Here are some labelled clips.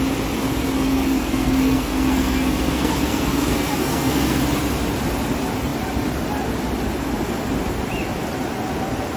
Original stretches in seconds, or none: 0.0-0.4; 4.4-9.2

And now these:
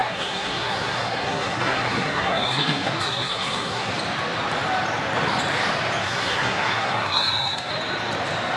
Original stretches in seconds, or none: 3.9-6.0; 7.7-8.6

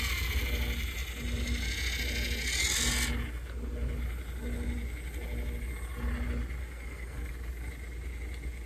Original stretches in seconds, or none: 0.0-6.6; 7.3-8.7

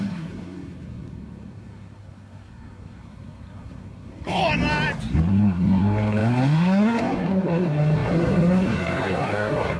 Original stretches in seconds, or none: 4.4-5.3

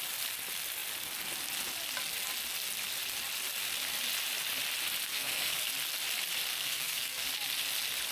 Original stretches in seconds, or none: 0.0-5.1; 5.6-6.5; 7.3-8.1